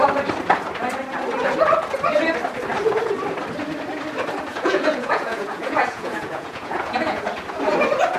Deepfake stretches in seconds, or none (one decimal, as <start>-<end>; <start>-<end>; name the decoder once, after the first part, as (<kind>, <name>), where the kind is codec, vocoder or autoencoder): 4.5-7.2 (vocoder, Vocos)